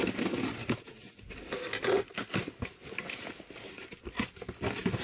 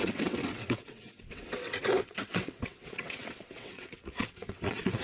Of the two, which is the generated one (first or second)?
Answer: second